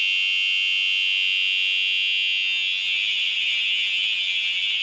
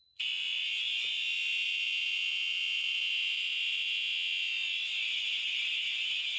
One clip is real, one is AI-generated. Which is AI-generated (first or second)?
second